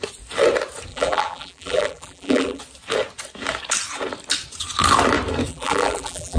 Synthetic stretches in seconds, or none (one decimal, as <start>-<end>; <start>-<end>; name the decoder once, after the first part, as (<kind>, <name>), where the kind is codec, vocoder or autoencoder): 0.9-2.6 (vocoder, BigVGAN v2); 5.5-6.4